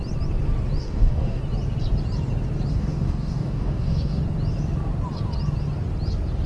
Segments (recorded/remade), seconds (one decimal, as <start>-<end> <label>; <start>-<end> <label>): 0.0-0.8 recorded; 0.8-1.4 remade; 1.4-2.7 recorded; 2.7-4.2 remade; 4.2-6.5 recorded